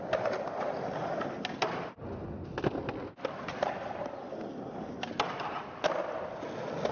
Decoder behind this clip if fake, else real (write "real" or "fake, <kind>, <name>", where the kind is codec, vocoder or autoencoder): real